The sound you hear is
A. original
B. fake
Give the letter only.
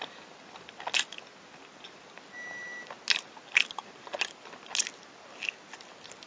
A